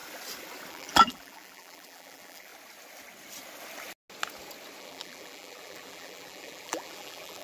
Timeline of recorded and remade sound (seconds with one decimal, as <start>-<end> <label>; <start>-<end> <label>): 0.0-0.7 recorded; 0.7-2.5 remade; 2.5-4.8 recorded; 4.8-7.4 remade